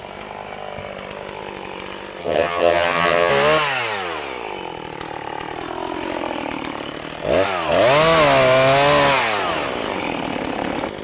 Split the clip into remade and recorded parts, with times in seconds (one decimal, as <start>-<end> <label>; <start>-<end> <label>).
0.0-2.2 recorded; 2.2-3.3 remade; 3.3-11.0 recorded